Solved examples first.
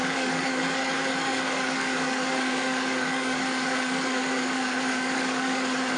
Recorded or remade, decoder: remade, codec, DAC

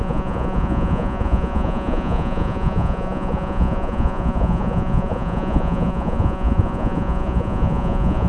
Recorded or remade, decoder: remade, vocoder, Vocos